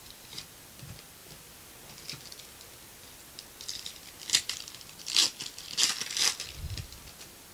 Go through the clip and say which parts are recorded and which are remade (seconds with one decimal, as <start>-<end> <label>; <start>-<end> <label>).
0.0-5.2 remade; 5.2-6.6 recorded; 6.6-7.5 remade